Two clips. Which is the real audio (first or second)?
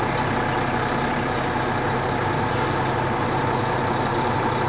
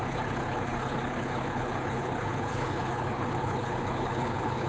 first